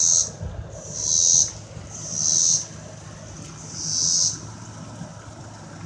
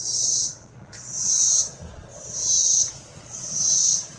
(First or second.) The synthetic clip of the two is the second